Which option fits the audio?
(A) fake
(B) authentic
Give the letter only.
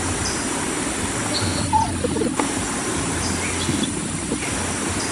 B